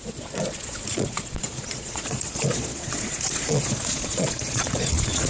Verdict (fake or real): fake